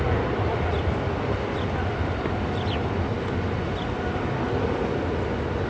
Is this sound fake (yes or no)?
no